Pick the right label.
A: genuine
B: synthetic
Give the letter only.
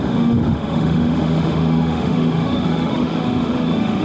B